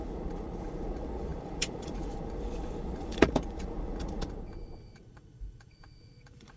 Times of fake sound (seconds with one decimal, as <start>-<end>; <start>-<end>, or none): 0.0-6.6